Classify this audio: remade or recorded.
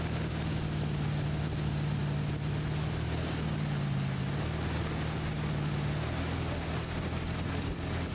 recorded